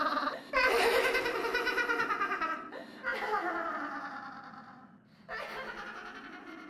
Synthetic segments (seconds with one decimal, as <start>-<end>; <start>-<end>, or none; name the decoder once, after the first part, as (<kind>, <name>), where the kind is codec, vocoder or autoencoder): none